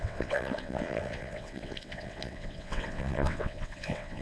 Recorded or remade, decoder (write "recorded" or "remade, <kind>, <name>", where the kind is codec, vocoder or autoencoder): remade, vocoder, WaveNeXt